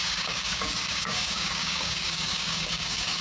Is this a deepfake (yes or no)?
yes